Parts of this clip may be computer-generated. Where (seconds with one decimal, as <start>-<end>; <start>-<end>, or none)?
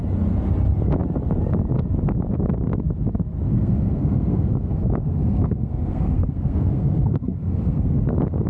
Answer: 3.5-8.0